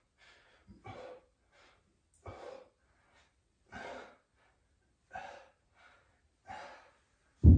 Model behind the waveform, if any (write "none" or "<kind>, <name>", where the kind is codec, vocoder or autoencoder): none